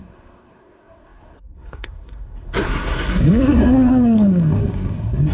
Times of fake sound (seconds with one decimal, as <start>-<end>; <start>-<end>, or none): 0.0-5.3